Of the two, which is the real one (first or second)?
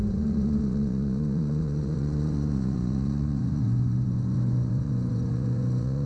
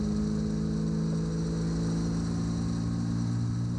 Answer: second